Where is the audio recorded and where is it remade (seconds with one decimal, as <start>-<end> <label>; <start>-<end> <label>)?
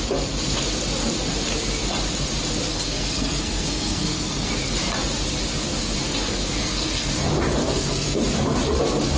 0.0-2.7 recorded; 2.7-4.5 remade; 4.5-6.6 recorded; 6.6-7.1 remade; 7.1-7.6 recorded; 7.6-8.2 remade; 8.2-9.2 recorded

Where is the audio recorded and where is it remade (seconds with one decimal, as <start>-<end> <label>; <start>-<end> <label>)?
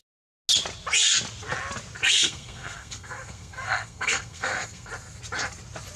0.0-2.0 recorded; 2.0-4.9 remade; 4.9-6.0 recorded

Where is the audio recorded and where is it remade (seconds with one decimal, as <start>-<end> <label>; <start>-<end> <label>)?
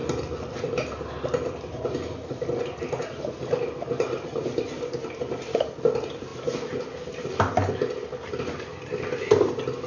0.0-9.9 recorded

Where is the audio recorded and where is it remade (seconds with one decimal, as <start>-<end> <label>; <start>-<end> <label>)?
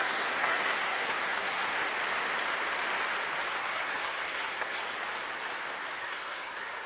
0.0-1.9 remade; 1.9-3.5 recorded; 3.5-4.8 remade; 4.8-6.0 recorded; 6.0-6.9 remade